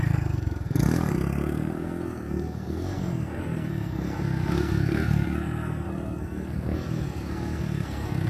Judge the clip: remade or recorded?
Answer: remade